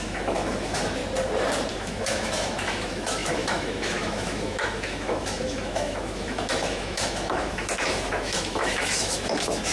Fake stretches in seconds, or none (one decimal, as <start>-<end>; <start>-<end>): 0.0-1.0; 1.7-9.7